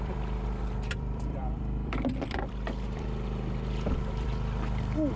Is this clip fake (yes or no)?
yes